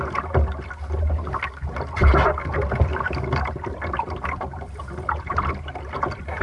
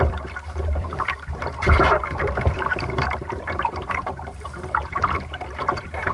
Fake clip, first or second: second